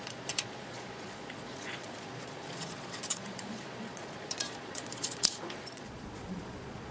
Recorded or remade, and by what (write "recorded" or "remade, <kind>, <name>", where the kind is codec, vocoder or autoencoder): remade, vocoder, Vocos